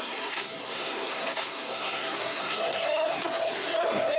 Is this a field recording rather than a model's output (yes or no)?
no